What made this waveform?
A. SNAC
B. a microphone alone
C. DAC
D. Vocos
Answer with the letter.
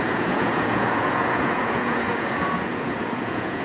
D